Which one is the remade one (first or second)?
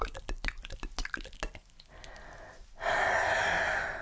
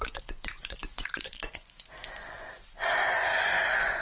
second